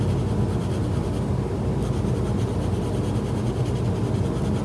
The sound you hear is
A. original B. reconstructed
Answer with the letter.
A